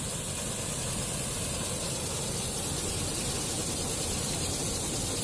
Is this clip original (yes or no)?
yes